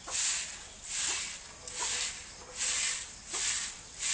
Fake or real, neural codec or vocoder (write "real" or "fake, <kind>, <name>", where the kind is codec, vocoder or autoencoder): real